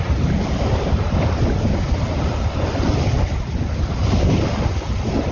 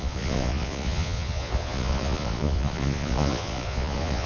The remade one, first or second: second